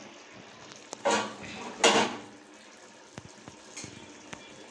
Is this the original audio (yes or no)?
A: yes